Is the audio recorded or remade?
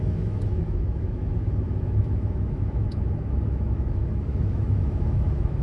remade